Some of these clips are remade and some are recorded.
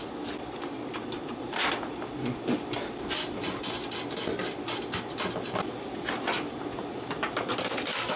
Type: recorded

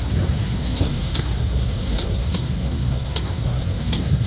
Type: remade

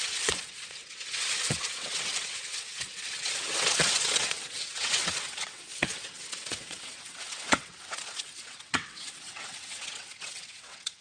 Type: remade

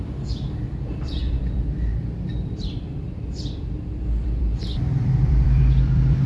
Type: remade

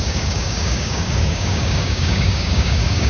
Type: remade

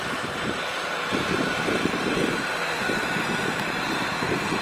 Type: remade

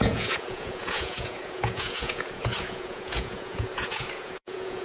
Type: remade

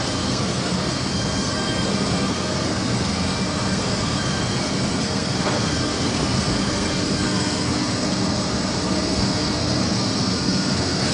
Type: remade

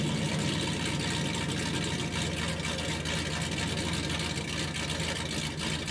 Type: recorded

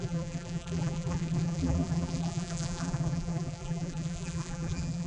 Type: remade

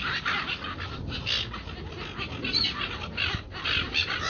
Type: recorded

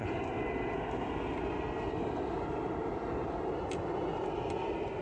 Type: recorded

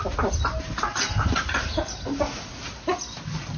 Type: recorded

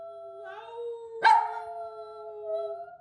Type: recorded